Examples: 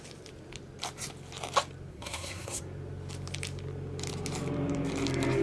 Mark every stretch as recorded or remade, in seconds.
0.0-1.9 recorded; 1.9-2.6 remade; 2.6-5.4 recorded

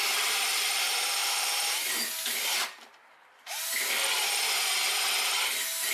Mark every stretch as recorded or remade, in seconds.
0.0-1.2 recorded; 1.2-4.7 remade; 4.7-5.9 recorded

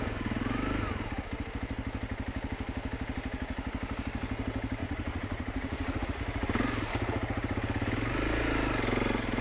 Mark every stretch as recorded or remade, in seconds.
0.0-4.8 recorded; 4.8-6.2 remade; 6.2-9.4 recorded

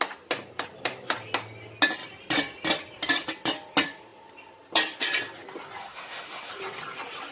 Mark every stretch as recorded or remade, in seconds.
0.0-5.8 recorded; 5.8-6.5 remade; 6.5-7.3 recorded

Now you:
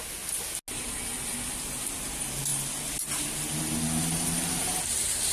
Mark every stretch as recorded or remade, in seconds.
0.0-5.3 recorded

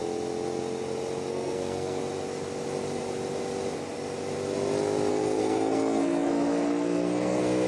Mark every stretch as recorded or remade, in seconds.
0.0-1.3 recorded; 1.3-2.0 remade; 2.0-5.1 recorded; 5.1-7.7 remade

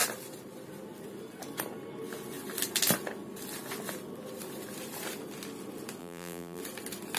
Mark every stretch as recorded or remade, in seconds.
0.0-6.0 recorded; 6.0-6.6 remade; 6.6-7.2 recorded